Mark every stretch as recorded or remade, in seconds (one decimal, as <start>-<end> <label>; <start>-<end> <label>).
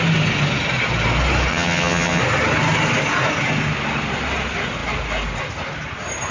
0.0-1.5 recorded; 1.5-2.2 remade; 2.2-6.3 recorded